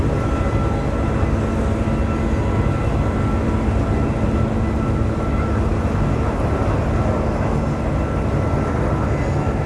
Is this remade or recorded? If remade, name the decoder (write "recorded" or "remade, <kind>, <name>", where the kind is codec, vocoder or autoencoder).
recorded